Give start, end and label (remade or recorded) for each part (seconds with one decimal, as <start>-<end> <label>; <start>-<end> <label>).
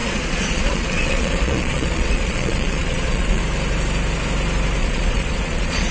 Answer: 0.0-3.4 remade; 3.4-4.8 recorded; 4.8-5.9 remade